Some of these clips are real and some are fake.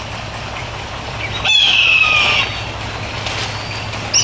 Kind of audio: real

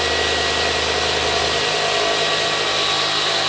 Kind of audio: real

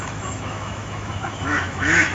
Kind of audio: fake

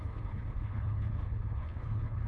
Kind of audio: fake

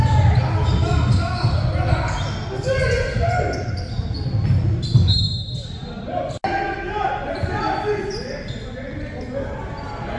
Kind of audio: real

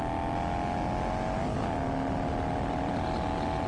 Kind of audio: real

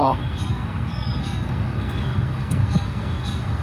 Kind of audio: fake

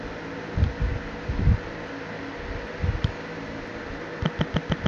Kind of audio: real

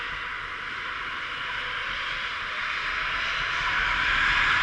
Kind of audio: real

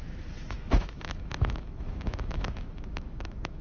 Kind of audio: fake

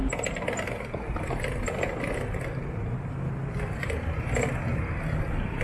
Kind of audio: real